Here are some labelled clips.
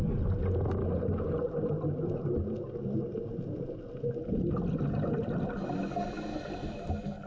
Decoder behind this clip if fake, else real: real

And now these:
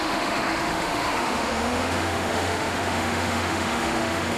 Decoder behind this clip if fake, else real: fake, autoencoder, DAC-VAE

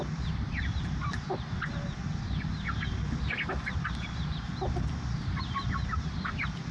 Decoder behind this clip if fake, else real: real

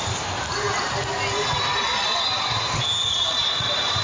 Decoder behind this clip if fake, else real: real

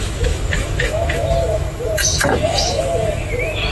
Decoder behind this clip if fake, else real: fake, autoencoder, DAC-VAE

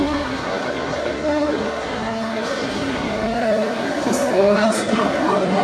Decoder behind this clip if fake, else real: fake, codec, SNAC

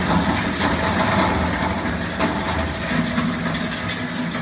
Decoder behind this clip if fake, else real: real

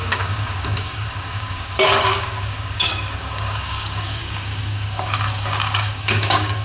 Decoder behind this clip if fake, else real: fake, codec, DAC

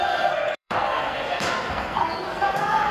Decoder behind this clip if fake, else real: fake, codec, SNAC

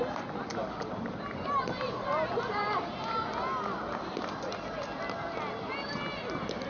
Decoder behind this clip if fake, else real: real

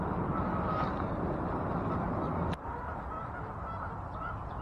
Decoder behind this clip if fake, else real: real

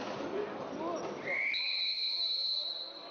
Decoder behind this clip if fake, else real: fake, vocoder, BigVGAN v2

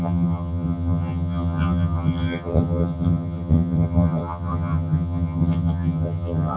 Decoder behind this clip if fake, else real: fake, vocoder, HiFi-GAN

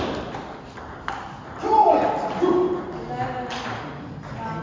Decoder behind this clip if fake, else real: real